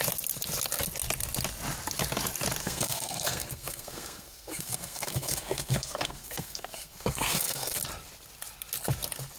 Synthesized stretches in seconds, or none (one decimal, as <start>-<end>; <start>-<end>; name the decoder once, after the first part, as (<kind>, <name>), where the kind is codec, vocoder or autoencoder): 2.6-7.8 (codec, SNAC)